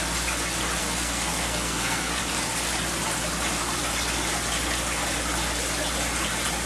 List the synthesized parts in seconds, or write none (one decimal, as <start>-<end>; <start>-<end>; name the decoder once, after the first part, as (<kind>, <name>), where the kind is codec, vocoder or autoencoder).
0.8-2.2 (codec, SNAC)